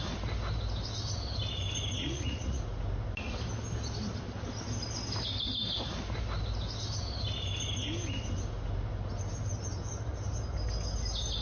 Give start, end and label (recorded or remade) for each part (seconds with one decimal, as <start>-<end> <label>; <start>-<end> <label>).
0.0-2.0 recorded; 2.0-2.6 remade; 2.6-11.4 recorded